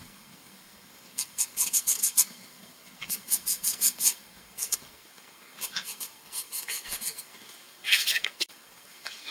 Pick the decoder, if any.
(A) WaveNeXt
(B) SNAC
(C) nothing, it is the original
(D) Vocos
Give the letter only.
B